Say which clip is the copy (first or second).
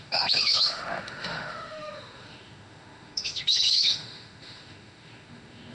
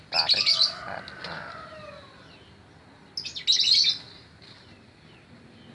first